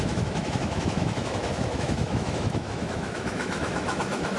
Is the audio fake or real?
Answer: fake